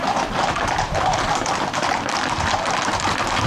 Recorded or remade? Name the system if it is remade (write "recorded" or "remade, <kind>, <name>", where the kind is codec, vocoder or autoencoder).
remade, vocoder, BigVGAN v2